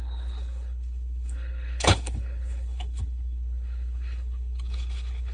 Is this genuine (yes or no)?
no